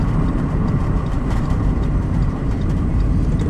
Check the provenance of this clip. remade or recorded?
remade